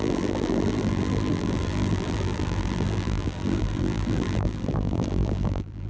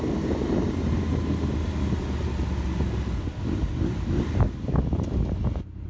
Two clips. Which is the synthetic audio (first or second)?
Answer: first